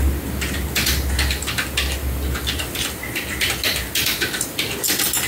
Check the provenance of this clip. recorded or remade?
recorded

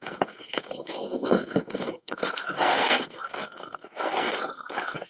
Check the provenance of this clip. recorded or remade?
remade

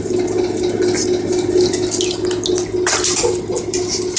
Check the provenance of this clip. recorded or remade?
recorded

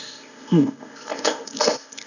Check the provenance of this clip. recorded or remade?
remade